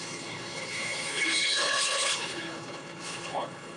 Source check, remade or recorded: remade